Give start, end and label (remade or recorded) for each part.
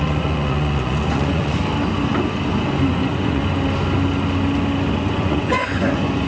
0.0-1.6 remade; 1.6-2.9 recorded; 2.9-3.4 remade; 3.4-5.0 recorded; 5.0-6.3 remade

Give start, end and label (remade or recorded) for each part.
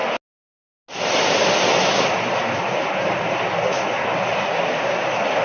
0.0-5.4 recorded